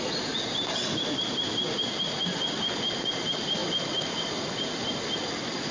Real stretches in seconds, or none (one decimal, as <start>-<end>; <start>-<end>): 0.0-5.7